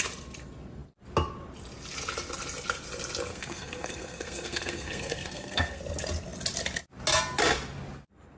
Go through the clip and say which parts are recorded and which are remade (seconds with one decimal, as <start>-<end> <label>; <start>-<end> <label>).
0.0-3.3 recorded; 3.3-5.8 remade; 5.8-8.4 recorded